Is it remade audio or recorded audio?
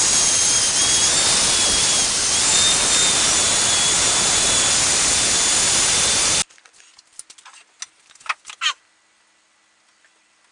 recorded